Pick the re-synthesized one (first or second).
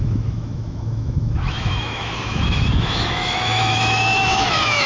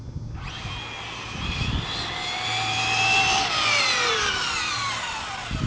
first